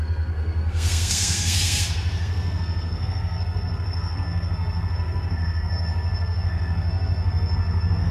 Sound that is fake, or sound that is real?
fake